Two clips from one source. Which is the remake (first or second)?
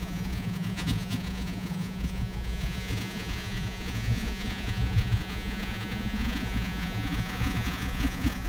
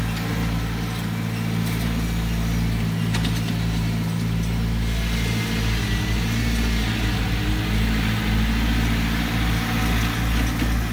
first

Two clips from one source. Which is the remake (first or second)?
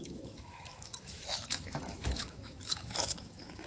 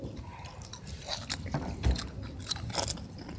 first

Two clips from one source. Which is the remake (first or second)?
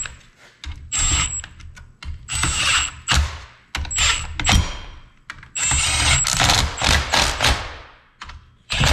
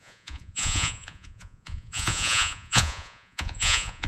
second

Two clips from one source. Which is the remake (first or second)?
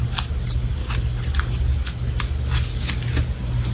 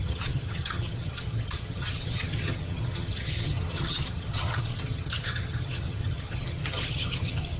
second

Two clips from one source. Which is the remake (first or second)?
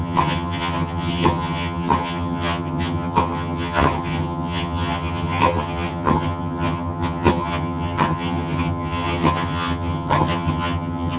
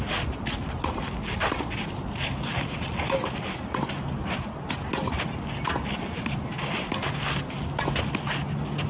first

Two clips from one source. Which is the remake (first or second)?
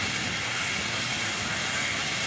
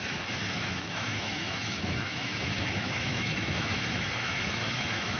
second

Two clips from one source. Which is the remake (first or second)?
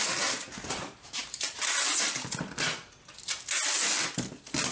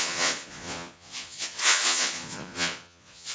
second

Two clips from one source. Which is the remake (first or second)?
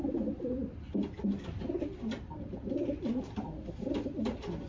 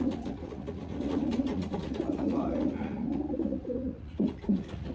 second